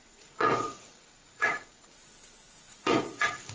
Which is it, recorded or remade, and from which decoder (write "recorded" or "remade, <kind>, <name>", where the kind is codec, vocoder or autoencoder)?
remade, vocoder, Vocos